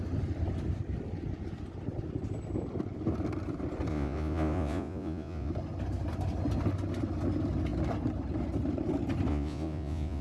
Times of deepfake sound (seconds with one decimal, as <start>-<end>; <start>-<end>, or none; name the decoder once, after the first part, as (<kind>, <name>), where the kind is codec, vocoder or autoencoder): 3.9-5.5 (vocoder, Vocos); 9.3-10.2